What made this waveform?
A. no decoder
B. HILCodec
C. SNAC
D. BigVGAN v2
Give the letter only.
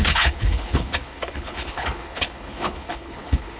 B